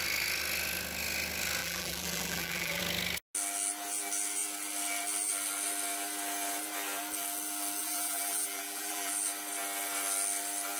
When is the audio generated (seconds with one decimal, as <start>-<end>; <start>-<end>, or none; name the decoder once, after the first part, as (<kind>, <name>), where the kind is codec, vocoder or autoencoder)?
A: 1.6-2.8 (vocoder, BigVGAN v2); 7.8-9.1